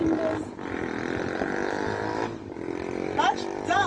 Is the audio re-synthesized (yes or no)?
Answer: no